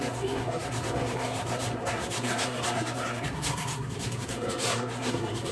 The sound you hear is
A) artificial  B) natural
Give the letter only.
A